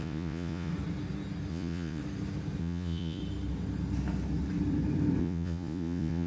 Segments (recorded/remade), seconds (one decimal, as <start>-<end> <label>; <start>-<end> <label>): 0.0-0.7 remade; 0.7-1.5 recorded; 1.5-2.0 remade; 2.0-2.6 recorded; 2.6-3.2 remade; 3.2-5.2 recorded; 5.2-6.3 remade